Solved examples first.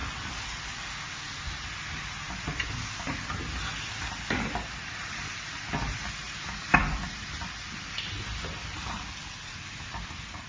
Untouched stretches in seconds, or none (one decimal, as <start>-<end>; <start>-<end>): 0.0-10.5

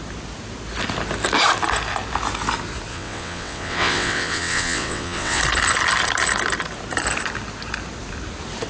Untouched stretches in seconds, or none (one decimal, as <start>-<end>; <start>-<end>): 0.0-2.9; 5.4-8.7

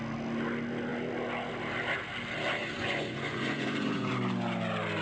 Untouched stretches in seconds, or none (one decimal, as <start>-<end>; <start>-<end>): 0.0-2.6; 4.1-5.0